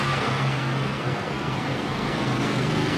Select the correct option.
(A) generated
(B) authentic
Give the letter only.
A